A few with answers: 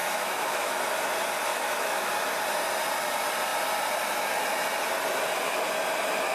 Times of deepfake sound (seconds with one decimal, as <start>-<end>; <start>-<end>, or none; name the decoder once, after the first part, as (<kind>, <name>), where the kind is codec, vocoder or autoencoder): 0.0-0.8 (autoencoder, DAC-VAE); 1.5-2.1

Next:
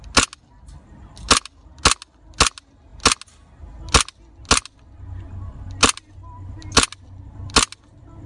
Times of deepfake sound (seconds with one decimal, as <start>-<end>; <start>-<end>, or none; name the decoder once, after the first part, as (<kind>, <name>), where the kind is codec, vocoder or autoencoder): none

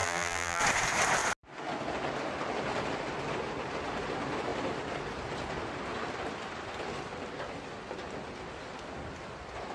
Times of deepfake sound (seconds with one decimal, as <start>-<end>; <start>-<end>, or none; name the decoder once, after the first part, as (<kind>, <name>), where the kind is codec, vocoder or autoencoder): 0.0-0.6 (vocoder, BigVGAN v2)